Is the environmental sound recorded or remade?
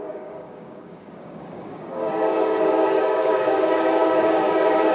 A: remade